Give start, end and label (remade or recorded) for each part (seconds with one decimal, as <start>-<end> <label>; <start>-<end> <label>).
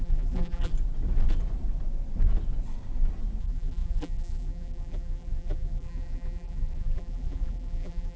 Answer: 0.0-0.7 remade; 0.7-3.4 recorded; 3.4-8.2 remade